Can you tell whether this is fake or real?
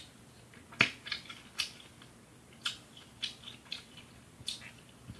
real